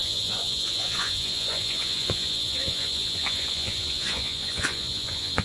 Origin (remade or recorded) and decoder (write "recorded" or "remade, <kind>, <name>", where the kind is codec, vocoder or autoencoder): remade, vocoder, Vocos